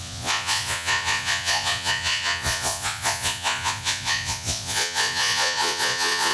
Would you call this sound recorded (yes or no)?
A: no